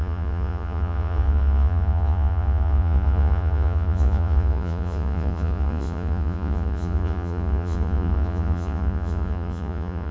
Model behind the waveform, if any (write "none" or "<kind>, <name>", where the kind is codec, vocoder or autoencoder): vocoder, Vocos